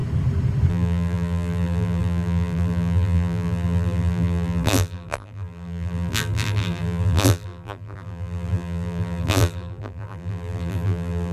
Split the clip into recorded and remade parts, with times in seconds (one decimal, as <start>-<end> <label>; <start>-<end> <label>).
0.0-0.7 recorded; 0.7-11.3 remade